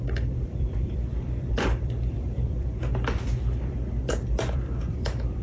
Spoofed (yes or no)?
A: yes